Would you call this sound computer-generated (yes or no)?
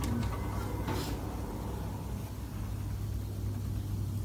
no